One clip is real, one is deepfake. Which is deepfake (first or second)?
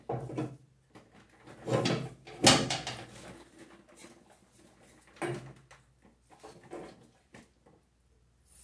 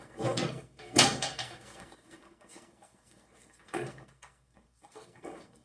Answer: second